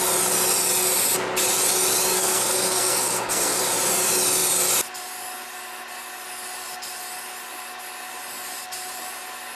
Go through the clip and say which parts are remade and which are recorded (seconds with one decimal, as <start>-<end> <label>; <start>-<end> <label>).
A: 0.0-2.1 recorded; 2.1-3.6 remade; 3.6-9.6 recorded